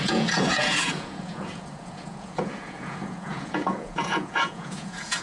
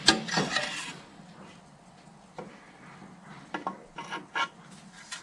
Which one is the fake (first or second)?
first